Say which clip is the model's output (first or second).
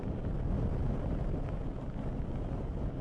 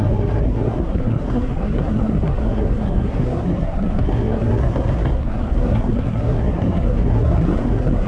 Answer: second